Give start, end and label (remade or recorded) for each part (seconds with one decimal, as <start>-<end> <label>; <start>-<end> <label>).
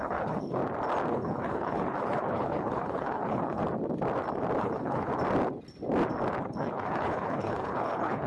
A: 0.0-0.6 remade; 0.6-1.1 recorded; 1.1-3.6 remade; 3.6-4.6 recorded; 4.6-5.1 remade; 5.1-6.4 recorded; 6.4-8.3 remade